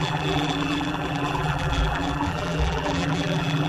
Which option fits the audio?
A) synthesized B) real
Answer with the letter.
A